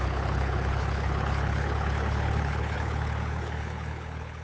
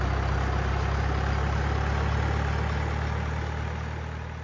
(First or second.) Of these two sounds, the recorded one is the second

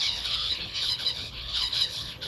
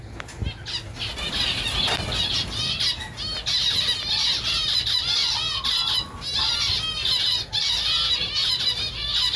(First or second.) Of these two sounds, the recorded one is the second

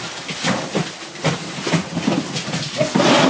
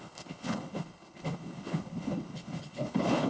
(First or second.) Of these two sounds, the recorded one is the first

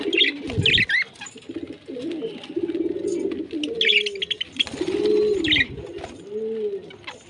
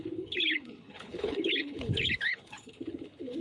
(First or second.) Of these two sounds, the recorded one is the first